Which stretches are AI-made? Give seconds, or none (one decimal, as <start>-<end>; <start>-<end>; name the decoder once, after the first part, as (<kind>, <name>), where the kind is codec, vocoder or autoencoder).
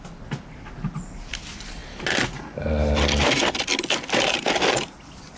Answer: none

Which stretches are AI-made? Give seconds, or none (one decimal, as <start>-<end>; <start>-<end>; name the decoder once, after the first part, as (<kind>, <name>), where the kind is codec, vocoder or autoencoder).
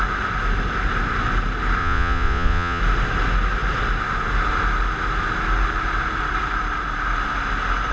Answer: 1.8-2.8 (vocoder, Vocos)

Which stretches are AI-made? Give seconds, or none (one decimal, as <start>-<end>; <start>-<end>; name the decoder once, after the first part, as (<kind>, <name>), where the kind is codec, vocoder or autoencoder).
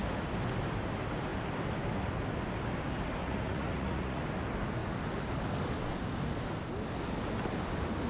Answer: 3.2-4.2 (vocoder, Vocos)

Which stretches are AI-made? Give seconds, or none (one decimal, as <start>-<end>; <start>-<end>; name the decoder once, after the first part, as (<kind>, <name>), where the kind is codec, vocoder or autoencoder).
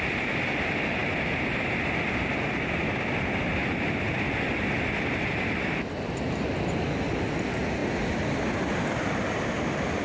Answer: none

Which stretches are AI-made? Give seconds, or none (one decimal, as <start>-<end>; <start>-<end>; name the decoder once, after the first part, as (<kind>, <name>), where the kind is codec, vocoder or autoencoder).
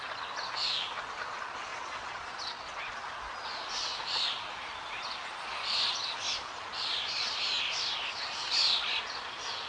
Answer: 1.7-2.9 (vocoder, Vocos)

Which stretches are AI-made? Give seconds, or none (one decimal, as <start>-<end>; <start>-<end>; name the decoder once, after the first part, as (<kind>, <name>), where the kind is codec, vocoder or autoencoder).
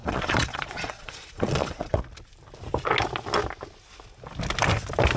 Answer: 0.0-2.0 (vocoder, Vocos)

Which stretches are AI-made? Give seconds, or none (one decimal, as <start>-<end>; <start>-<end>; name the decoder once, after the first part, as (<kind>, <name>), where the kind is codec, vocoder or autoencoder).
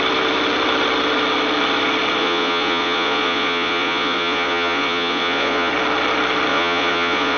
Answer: 2.2-5.7 (vocoder, Vocos); 6.5-7.4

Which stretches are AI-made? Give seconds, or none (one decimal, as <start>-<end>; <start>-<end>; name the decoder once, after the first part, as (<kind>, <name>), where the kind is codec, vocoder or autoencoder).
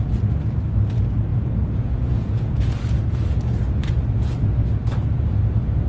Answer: 1.3-2.7 (vocoder, Vocos)